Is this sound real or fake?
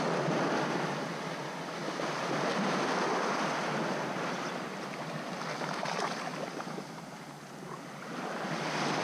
real